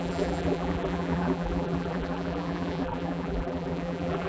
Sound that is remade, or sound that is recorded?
remade